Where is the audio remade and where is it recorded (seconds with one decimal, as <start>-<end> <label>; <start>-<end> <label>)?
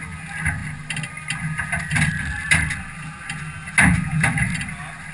0.0-5.1 recorded